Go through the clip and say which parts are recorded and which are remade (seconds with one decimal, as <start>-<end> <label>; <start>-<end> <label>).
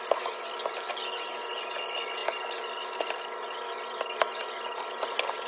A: 0.0-5.5 recorded